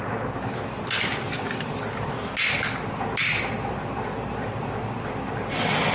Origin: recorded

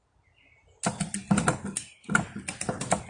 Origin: recorded